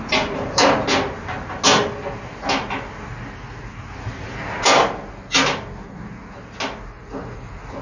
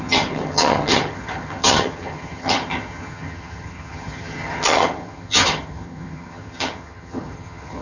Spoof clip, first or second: second